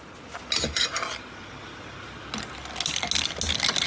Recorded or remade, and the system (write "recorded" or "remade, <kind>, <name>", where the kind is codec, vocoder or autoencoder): recorded